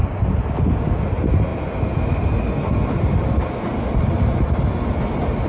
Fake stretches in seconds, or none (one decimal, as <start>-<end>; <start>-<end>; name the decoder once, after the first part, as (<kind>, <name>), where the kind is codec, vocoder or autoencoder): none